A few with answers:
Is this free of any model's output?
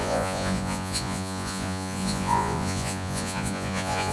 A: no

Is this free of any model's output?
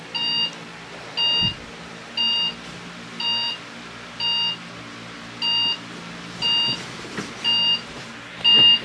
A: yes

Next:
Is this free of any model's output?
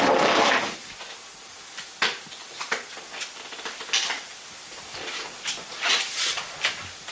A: yes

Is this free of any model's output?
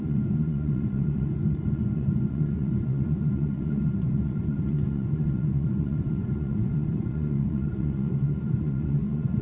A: no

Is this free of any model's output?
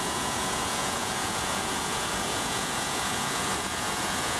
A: no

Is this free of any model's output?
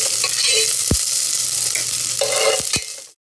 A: yes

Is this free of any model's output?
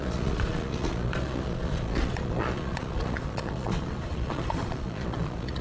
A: no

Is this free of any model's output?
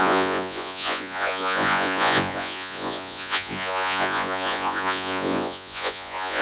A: no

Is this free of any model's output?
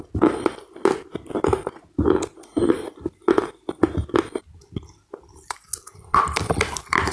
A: yes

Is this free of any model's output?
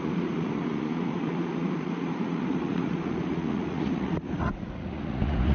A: no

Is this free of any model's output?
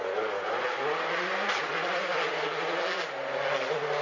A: yes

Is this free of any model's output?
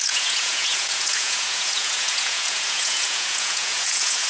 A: no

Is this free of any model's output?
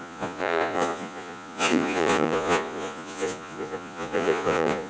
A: no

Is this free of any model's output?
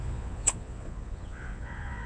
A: no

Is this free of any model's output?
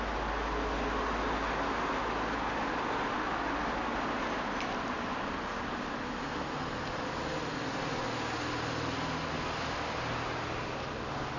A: yes